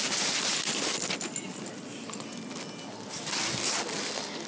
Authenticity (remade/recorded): recorded